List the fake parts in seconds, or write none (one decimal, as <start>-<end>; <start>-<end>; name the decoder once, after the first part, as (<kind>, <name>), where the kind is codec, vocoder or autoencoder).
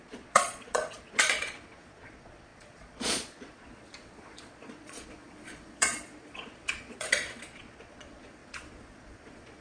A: 0.0-9.6 (vocoder, Vocos)